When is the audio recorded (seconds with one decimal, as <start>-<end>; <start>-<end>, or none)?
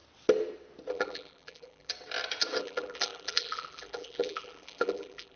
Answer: 0.0-0.9; 1.9-2.6